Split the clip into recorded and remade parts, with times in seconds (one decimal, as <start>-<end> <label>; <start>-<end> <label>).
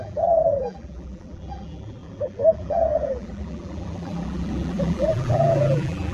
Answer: 0.0-6.1 remade